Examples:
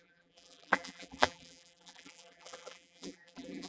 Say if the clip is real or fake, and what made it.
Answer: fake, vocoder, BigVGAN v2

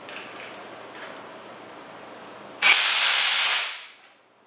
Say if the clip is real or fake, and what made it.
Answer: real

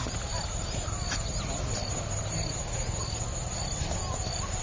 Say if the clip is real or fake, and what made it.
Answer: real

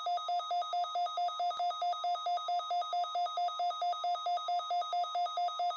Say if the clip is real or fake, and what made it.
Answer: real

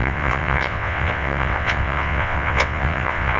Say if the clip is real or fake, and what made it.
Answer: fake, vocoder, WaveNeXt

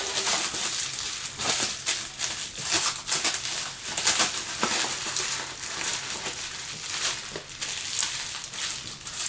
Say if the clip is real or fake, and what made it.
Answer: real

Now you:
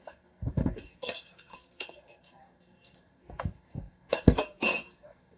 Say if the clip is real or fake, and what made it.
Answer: fake, codec, SNAC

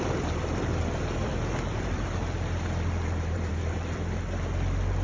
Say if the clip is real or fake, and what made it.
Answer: fake, vocoder, BigVGAN v2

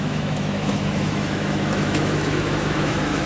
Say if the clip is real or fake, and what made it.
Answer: fake, autoencoder, DAC-VAE